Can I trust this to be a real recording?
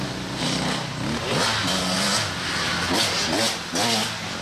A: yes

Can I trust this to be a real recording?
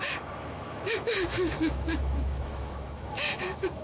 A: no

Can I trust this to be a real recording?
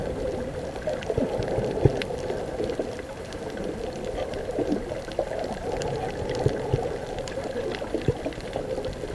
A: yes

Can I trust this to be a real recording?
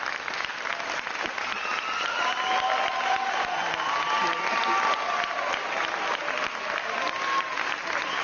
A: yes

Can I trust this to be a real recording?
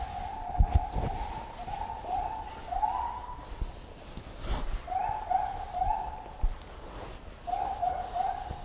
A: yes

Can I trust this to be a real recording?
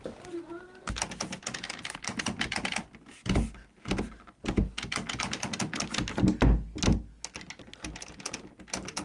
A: yes